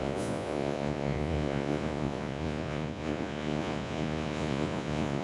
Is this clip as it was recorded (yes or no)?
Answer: no